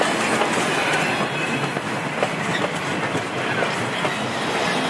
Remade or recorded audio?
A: recorded